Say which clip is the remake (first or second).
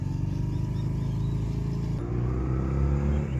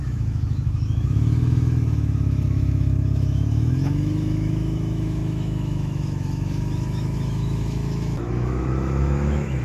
second